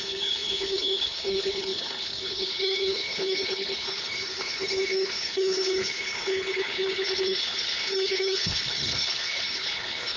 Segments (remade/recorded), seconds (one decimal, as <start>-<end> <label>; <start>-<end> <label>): 0.0-10.2 remade